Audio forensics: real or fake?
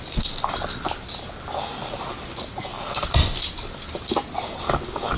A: real